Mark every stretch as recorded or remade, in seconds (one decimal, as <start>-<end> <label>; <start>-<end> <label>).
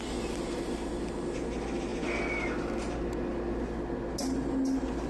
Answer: 0.0-5.1 recorded